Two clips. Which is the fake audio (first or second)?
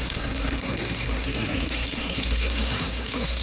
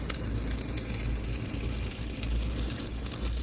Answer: first